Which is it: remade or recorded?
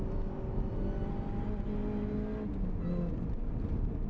recorded